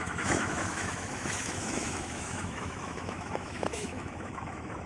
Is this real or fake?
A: fake